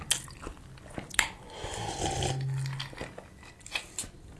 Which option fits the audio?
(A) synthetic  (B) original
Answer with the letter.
B